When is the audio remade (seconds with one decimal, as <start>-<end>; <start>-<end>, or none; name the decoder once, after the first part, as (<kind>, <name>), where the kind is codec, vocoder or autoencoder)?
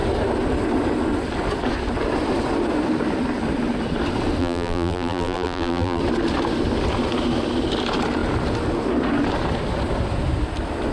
4.4-6.0 (vocoder, BigVGAN v2)